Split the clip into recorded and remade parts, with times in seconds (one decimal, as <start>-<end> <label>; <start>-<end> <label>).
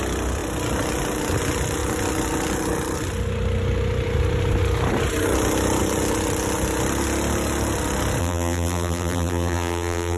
0.0-8.2 recorded; 8.2-10.2 remade